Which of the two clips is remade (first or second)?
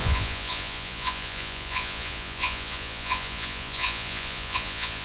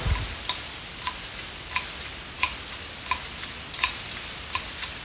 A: first